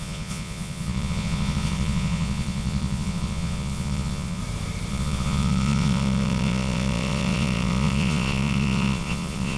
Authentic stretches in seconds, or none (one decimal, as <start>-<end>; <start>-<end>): 4.4-4.9